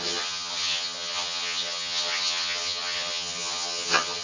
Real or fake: fake